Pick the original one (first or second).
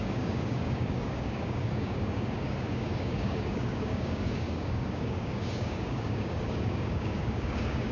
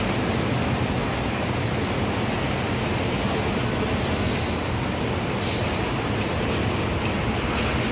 second